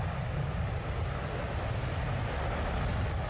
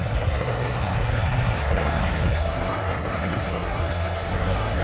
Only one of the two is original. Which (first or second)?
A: first